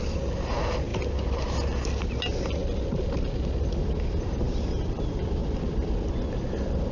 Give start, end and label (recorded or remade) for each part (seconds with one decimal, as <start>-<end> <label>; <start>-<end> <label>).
0.0-6.9 recorded